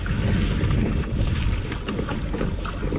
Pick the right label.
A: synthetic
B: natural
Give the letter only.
B